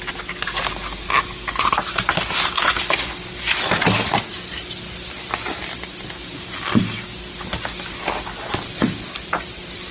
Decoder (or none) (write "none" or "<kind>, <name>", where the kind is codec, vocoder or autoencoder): none